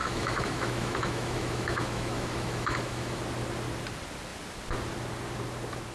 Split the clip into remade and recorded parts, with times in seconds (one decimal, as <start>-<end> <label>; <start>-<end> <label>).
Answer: 0.0-3.2 remade; 3.2-5.9 recorded